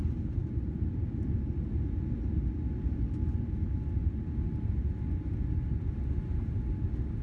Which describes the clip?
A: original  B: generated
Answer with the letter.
A